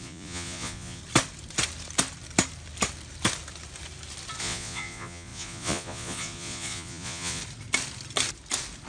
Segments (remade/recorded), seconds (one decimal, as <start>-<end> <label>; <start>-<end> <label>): 0.0-1.0 remade; 1.0-4.4 recorded; 4.4-7.4 remade; 7.4-8.9 recorded